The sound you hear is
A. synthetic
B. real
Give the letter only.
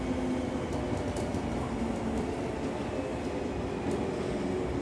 B